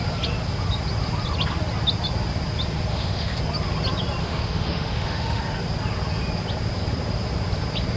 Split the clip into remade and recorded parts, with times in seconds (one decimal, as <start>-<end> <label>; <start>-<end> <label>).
0.0-2.9 recorded; 2.9-3.4 remade; 3.4-4.2 recorded; 4.2-5.4 remade; 5.4-8.0 recorded